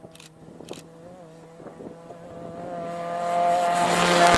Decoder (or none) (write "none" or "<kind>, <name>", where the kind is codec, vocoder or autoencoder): none